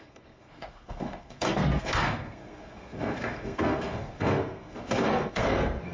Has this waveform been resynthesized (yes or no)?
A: yes